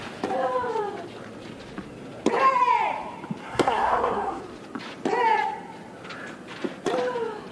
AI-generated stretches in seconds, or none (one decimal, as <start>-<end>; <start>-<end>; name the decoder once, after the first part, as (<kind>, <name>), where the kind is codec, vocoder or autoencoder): 3.4-4.4 (codec, SNAC)

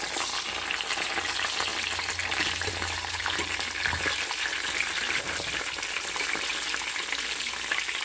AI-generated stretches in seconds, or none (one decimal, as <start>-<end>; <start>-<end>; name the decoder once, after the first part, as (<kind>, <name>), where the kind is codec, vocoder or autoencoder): none

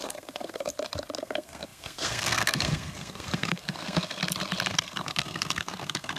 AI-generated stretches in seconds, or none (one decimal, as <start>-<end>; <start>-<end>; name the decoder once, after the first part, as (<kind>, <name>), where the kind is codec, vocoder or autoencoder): 0.0-0.7 (codec, SNAC); 1.2-4.2; 4.7-6.2